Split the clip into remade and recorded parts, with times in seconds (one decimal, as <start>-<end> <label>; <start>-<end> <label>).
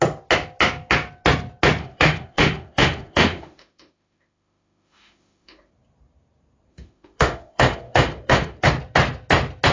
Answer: 0.0-1.8 recorded; 1.8-5.7 remade; 5.7-6.7 recorded; 6.7-8.7 remade; 8.7-9.7 recorded